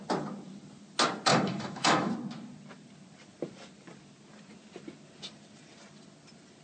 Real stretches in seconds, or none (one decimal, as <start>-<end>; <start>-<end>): 0.0-1.3; 2.1-6.6